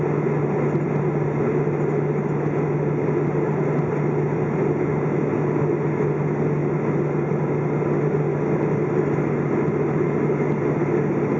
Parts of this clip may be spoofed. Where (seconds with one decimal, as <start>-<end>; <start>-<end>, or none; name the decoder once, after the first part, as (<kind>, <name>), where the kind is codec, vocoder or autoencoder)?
none